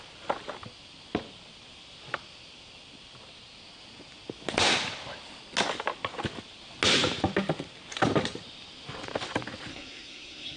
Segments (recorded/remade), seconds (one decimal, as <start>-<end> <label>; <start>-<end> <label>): 0.0-9.7 recorded; 9.7-10.6 remade